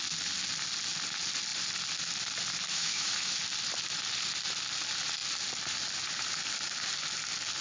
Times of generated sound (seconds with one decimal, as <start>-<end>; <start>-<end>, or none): 2.7-3.4